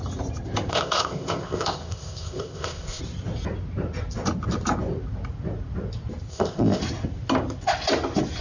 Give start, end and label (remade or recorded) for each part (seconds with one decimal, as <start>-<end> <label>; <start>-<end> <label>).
0.0-0.7 recorded; 0.7-3.0 remade; 3.0-6.3 recorded; 6.3-6.8 remade; 6.8-8.4 recorded